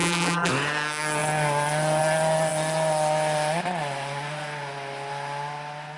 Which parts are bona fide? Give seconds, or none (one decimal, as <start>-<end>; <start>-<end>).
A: 0.5-6.0